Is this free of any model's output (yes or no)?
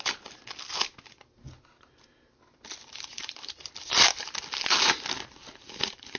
yes